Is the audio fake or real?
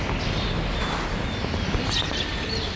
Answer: real